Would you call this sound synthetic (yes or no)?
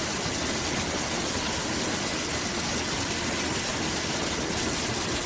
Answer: no